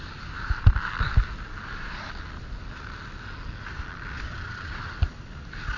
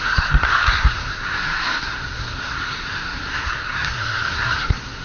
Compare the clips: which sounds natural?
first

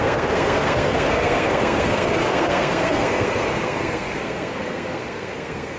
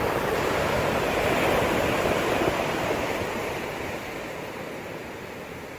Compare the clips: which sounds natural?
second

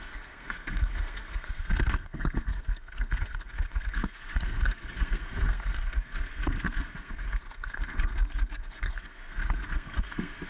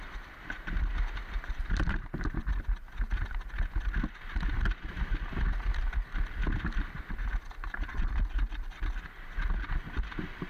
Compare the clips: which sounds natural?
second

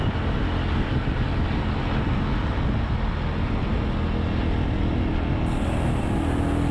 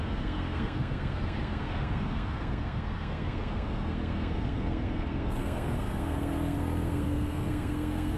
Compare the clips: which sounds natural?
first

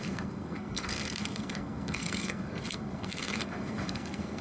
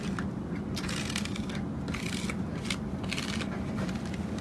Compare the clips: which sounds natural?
second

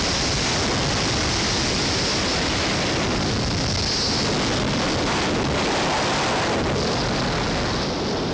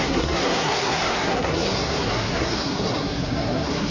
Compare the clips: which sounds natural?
first